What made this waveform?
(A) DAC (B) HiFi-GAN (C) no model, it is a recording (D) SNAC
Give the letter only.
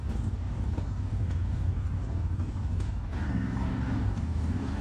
A